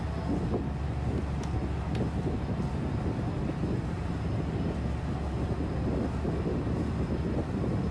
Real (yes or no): yes